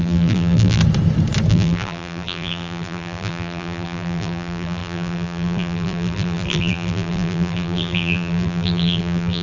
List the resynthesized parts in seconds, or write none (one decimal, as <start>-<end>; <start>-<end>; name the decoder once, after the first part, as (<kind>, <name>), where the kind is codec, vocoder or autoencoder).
0.0-0.8 (vocoder, BigVGAN v2); 1.5-9.4